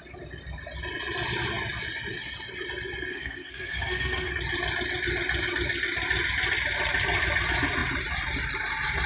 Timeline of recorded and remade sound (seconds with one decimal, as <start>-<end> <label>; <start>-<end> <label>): 0.0-3.1 recorded; 3.1-4.3 remade; 4.3-9.1 recorded